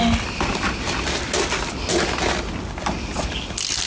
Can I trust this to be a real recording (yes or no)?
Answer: yes